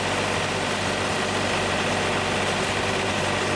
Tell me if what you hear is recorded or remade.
recorded